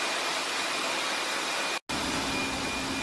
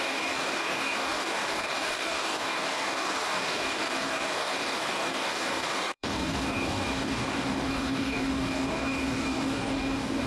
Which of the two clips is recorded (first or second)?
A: first